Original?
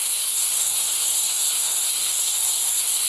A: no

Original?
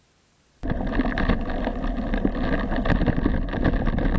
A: yes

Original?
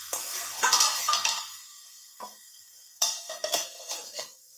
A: no